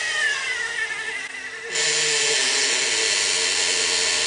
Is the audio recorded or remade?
recorded